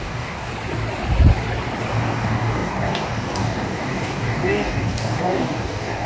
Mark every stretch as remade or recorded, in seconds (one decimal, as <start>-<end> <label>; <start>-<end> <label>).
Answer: 0.0-0.5 remade; 0.5-1.9 recorded; 1.9-6.1 remade